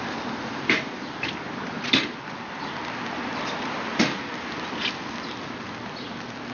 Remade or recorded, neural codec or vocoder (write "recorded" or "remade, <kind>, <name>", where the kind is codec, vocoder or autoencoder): recorded